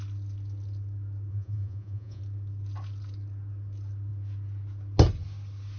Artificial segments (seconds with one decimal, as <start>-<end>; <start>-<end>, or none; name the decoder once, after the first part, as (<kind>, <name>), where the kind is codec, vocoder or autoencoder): 1.3-2.2 (vocoder, Vocos)